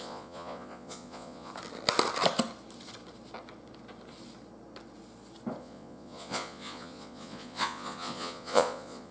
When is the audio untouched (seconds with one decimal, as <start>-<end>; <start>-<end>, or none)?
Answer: 1.5-5.6